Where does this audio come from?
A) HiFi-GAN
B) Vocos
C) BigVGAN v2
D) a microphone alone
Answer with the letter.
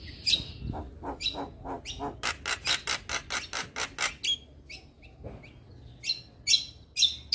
D